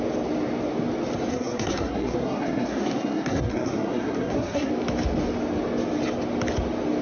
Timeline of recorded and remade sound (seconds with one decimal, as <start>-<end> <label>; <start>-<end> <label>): 0.0-1.3 recorded; 1.3-4.7 remade; 4.7-7.0 recorded